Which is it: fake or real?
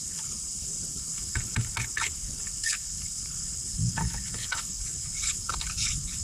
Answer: fake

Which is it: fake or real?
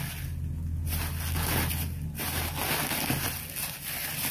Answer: real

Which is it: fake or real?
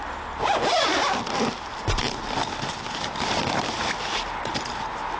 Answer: real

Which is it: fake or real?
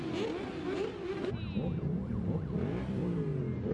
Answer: real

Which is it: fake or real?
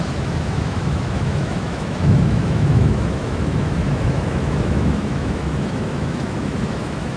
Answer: fake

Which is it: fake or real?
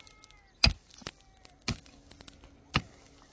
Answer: real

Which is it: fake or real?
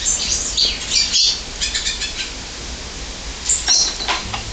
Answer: real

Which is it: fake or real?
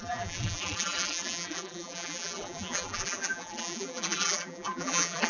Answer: fake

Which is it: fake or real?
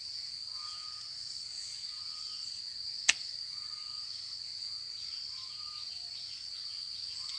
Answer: real